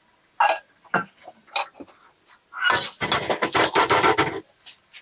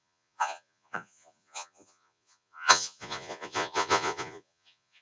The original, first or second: first